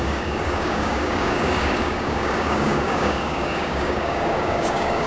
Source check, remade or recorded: remade